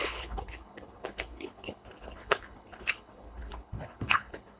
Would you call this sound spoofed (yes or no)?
yes